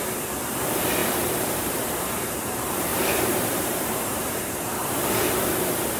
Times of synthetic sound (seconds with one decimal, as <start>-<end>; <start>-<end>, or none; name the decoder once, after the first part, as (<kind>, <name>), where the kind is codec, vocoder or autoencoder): 1.0-2.2 (vocoder, BigVGAN v2); 2.9-5.0